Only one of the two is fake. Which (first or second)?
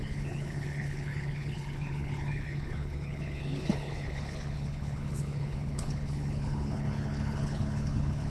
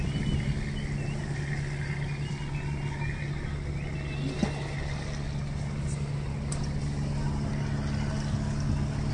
first